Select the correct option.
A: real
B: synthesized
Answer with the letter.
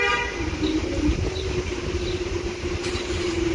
A